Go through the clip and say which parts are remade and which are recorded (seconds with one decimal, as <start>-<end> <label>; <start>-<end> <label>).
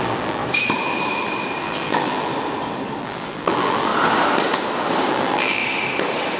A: 0.0-0.4 remade; 0.4-1.6 recorded; 1.6-2.3 remade; 2.3-3.0 recorded; 3.0-3.9 remade; 3.9-5.1 recorded; 5.1-5.6 remade; 5.6-6.4 recorded